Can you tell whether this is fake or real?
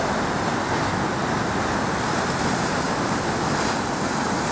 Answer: real